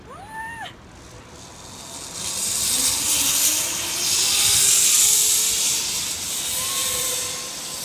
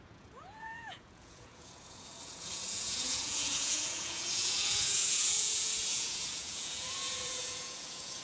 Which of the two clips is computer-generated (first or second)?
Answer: second